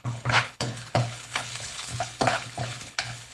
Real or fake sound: fake